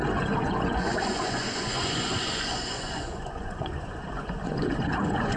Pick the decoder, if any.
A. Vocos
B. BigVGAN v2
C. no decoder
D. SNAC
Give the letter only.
A